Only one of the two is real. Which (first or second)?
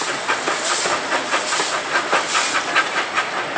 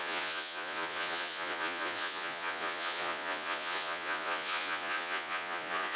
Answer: first